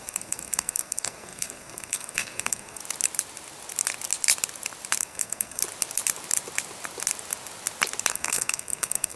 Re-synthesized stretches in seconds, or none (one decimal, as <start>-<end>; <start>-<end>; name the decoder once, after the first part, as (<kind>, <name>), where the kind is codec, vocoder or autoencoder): 0.0-2.8 (codec, SNAC); 5.0-5.6; 8.1-9.2

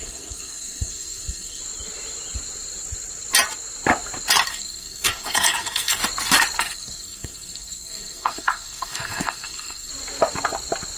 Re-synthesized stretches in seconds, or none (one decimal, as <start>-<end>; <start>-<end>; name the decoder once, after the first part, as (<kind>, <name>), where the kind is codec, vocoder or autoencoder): 0.0-1.6 (codec, SNAC); 4.5-6.0; 6.6-9.9

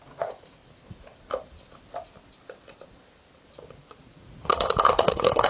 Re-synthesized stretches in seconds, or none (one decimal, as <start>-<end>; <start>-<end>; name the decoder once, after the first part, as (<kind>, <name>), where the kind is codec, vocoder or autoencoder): 0.0-0.6 (vocoder, Vocos); 3.5-5.5

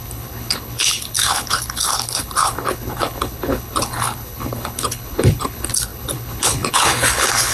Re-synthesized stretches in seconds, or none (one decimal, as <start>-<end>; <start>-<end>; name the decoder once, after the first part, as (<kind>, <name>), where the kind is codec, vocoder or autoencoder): 0.0-7.5 (codec, HILCodec)

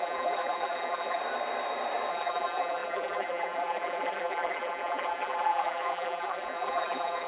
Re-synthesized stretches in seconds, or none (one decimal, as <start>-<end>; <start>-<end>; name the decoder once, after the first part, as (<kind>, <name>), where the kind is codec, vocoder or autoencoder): 0.0-1.2 (vocoder, BigVGAN v2); 2.1-7.3

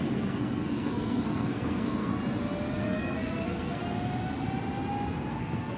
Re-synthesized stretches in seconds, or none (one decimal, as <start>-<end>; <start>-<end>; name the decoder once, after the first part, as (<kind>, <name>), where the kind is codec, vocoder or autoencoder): 0.0-2.1 (codec, SNAC); 2.7-3.8; 5.3-5.8

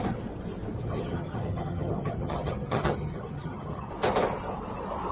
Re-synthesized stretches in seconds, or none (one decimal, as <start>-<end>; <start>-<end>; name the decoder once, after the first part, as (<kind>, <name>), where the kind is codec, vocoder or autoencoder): 0.8-3.9 (vocoder, HiFi-GAN)